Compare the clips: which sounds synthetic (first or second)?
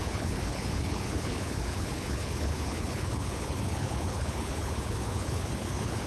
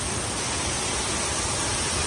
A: first